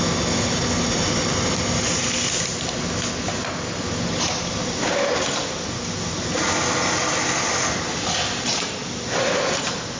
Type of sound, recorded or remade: recorded